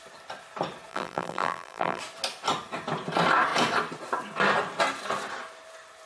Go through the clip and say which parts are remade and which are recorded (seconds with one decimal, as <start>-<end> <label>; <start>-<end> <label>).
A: 0.0-0.9 recorded; 0.9-2.0 remade; 2.0-6.1 recorded